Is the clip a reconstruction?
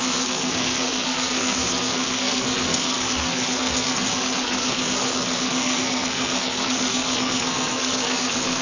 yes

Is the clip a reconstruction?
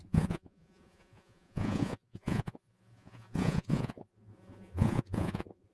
yes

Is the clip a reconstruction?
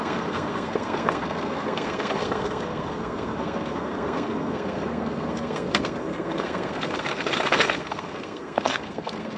yes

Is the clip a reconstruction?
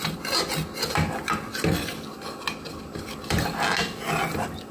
no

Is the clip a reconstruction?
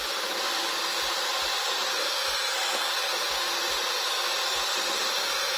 no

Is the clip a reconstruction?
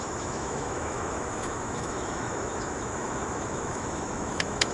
yes